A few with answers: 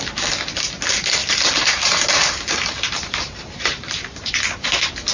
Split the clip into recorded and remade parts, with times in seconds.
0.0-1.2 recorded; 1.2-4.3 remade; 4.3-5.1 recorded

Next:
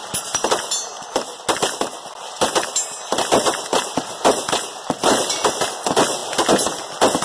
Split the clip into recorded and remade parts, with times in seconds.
0.0-4.2 recorded; 4.2-6.2 remade; 6.2-7.2 recorded

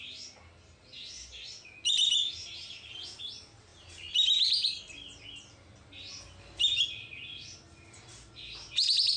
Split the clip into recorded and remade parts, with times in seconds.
0.0-9.2 recorded